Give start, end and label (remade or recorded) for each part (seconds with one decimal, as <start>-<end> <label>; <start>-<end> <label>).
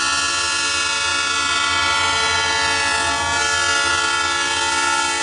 0.0-5.2 recorded